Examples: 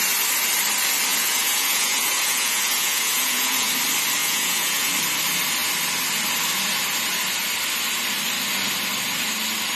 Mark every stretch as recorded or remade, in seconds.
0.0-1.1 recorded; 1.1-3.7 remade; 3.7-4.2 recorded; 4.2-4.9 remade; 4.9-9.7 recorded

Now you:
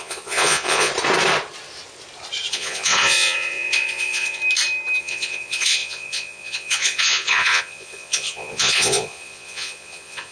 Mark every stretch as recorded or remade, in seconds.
0.0-0.9 remade; 0.9-2.5 recorded; 2.5-4.4 remade; 4.4-5.0 recorded; 5.0-10.3 remade

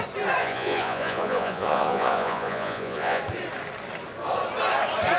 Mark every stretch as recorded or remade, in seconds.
0.0-0.4 recorded; 0.4-3.2 remade; 3.2-5.2 recorded

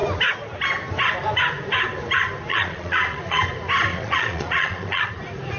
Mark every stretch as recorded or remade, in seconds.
0.0-2.5 recorded; 2.5-3.4 remade; 3.4-3.9 recorded; 3.9-5.1 remade; 5.1-5.6 recorded